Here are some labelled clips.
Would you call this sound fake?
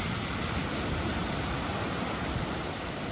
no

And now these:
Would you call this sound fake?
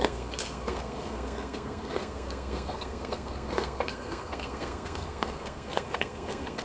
yes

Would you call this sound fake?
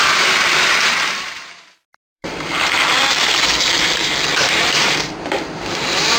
yes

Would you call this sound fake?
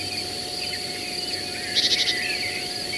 no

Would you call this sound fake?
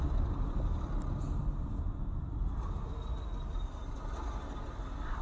no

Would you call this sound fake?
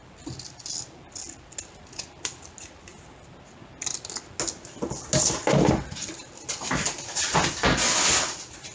no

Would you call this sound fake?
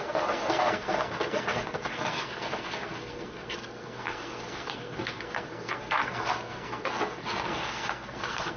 yes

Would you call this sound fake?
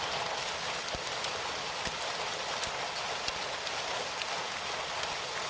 no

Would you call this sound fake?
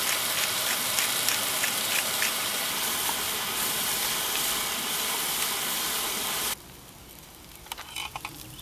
yes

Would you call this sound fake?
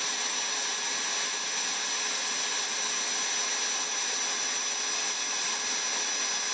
no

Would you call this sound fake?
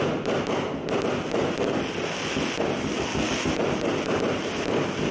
no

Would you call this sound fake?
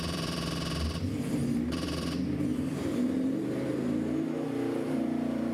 yes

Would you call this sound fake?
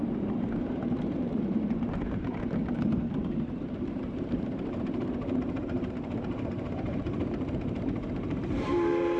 yes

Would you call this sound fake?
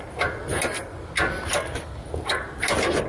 no